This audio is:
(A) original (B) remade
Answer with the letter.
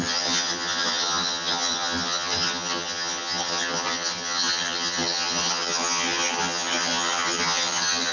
B